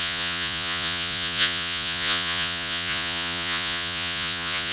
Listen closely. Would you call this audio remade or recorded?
remade